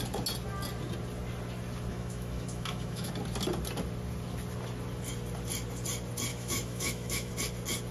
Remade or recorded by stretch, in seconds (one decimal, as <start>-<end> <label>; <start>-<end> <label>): 0.0-1.9 recorded; 1.9-3.1 remade; 3.1-6.3 recorded; 6.3-7.3 remade; 7.3-7.9 recorded